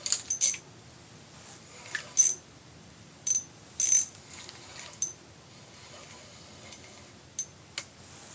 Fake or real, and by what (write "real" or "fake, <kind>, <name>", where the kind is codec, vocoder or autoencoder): real